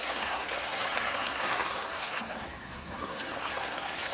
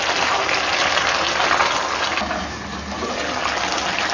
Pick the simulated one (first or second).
first